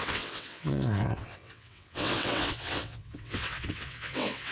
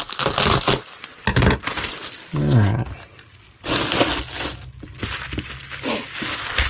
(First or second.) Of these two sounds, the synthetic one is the first